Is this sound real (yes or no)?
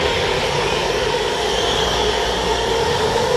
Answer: no